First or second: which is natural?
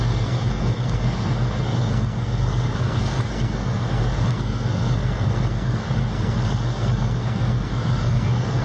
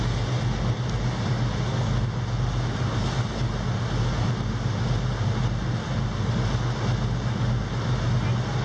second